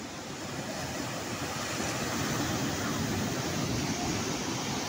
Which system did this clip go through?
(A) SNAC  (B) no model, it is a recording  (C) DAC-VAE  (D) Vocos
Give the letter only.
B